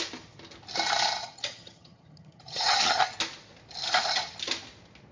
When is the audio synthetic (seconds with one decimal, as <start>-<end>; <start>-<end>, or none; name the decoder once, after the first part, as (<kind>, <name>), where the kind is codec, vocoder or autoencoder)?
1.2-3.1 (vocoder, HiFi-GAN)